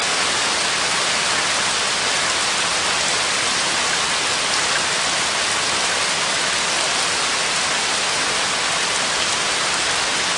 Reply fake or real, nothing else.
real